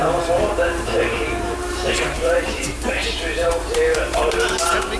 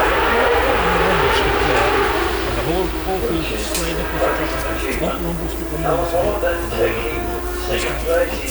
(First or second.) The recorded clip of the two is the second